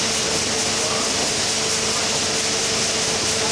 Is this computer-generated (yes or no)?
no